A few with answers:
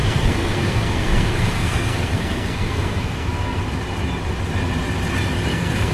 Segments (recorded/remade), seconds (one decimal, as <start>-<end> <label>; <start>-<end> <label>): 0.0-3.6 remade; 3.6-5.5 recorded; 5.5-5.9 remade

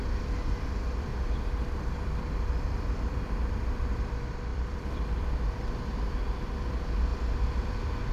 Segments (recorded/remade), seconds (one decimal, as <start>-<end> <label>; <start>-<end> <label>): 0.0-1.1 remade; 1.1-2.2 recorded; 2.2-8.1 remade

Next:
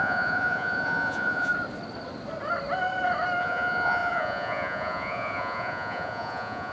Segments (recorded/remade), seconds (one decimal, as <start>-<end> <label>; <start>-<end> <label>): 0.0-1.5 remade; 1.5-3.4 recorded; 3.4-6.7 remade

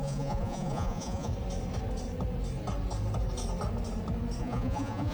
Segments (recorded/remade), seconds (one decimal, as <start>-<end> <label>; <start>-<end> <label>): 0.0-1.3 remade; 1.3-4.4 recorded; 4.4-5.1 remade

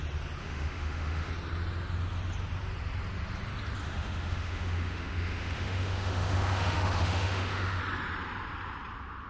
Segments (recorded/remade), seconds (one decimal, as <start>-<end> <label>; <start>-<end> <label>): 0.0-0.4 recorded; 0.4-1.3 remade; 1.3-3.8 recorded; 3.8-7.8 remade; 7.8-9.3 recorded